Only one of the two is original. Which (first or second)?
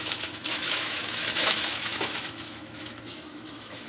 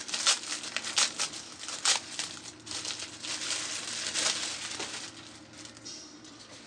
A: second